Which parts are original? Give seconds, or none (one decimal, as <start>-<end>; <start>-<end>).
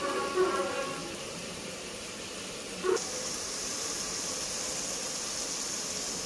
0.0-1.0; 4.2-6.3